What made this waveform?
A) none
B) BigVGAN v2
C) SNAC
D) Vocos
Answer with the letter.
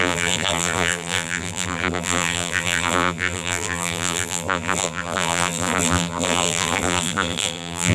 B